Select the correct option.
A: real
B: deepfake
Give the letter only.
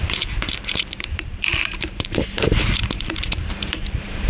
B